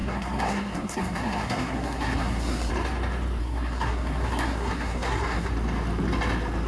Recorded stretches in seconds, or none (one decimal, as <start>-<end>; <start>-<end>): 2.7-3.4; 5.5-6.7